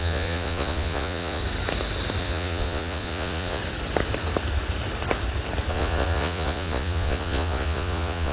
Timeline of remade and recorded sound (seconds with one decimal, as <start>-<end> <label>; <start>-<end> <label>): 0.0-1.4 remade; 1.4-2.2 recorded; 2.2-3.6 remade; 3.6-5.7 recorded; 5.7-8.3 remade

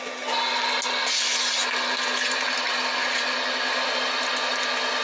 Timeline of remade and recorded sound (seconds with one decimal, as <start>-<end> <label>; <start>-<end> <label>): 0.0-5.0 recorded

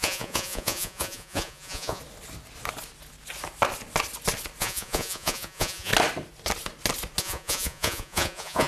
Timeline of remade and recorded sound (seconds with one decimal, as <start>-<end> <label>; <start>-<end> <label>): 0.0-2.0 remade; 2.0-4.6 recorded; 4.6-5.9 remade; 5.9-7.2 recorded; 7.2-8.7 remade

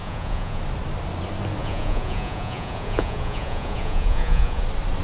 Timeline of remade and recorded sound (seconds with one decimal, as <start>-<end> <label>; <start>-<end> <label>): 0.0-0.6 remade; 0.6-1.6 recorded; 1.6-4.6 remade; 4.6-5.0 recorded

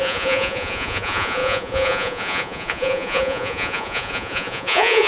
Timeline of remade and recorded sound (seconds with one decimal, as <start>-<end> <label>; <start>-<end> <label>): 0.0-5.1 remade

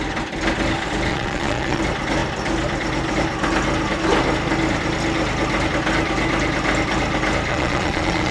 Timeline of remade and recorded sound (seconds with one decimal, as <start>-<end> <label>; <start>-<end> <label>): 0.0-1.1 recorded; 1.1-1.8 remade; 1.8-7.5 recorded; 7.5-8.3 remade